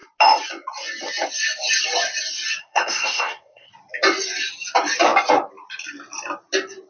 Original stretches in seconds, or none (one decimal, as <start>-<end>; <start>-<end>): 0.0-2.6; 3.7-6.9